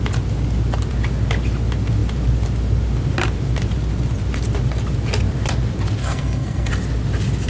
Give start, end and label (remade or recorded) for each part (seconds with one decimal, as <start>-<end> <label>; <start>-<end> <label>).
0.0-6.0 recorded; 6.0-6.7 remade; 6.7-7.5 recorded